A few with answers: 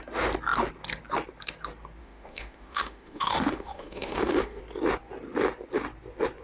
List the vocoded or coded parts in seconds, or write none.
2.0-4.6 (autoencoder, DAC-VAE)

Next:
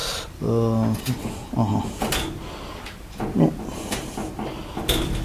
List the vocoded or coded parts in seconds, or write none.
none

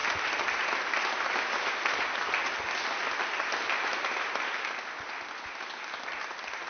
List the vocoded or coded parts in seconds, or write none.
none

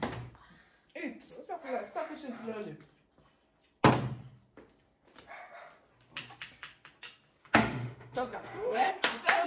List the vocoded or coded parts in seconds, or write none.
7.4-8.9 (autoencoder, DAC-VAE)

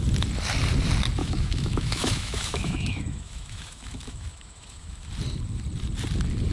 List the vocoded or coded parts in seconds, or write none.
1.2-5.1 (autoencoder, DAC-VAE)

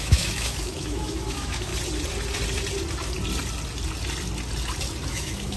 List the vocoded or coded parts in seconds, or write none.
0.0-1.7 (autoencoder, DAC-VAE); 5.1-5.6